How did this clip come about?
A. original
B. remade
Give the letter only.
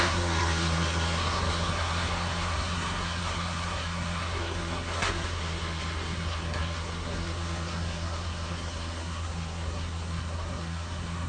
B